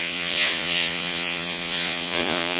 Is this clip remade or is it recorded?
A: remade